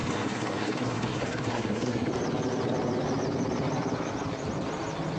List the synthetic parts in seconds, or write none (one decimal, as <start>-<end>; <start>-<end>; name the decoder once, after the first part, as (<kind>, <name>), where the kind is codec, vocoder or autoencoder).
0.0-2.1 (codec, SNAC)